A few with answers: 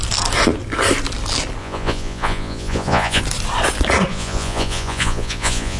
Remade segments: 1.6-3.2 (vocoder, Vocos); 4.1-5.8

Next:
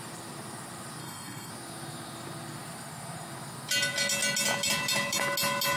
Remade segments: 1.0-1.5 (codec, SNAC)

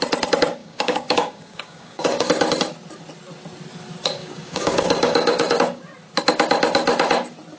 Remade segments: 0.6-2.3 (codec, DAC); 4.2-5.8

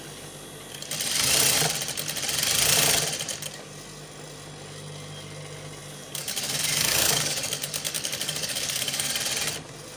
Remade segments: 6.2-9.1 (codec, DAC)

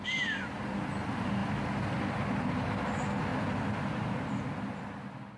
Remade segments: 3.3-4.4 (vocoder, BigVGAN v2)

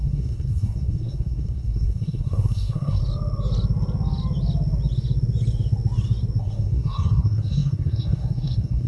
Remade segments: 0.0-3.0 (codec, SNAC); 6.4-8.9

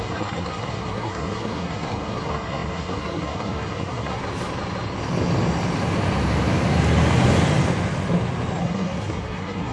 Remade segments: 0.0-4.2 (codec, SNAC); 8.6-9.7